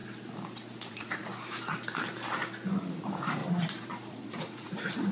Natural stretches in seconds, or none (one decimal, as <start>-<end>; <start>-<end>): 0.0-0.9; 1.3-2.7; 3.4-4.1